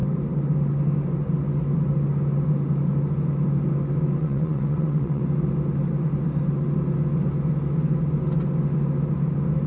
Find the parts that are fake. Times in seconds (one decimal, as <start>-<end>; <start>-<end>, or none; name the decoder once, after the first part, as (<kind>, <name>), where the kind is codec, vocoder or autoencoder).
4.2-5.2 (vocoder, WaveNeXt)